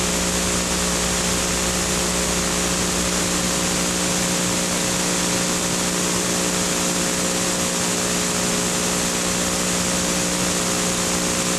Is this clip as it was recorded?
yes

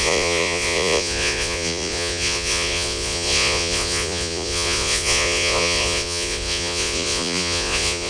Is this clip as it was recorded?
no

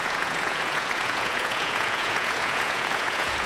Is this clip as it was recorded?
no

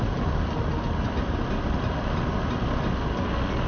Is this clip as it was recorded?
yes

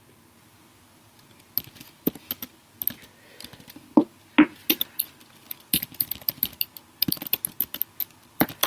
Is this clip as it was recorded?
yes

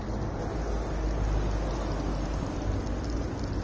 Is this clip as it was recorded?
yes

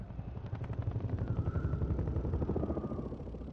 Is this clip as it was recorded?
yes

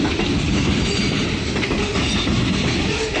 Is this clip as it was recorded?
yes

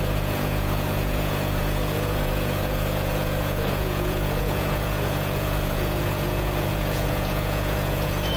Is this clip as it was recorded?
no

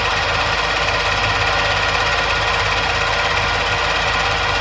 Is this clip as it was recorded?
yes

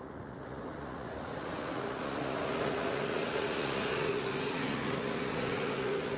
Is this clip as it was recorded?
no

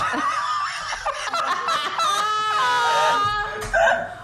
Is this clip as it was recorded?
yes